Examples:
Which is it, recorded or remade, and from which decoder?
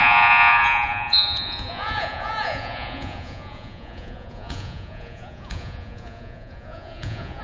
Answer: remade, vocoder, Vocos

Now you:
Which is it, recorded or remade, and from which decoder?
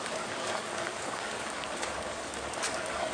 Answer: remade, codec, DAC